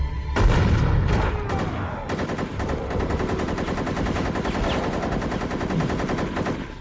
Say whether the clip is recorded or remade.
recorded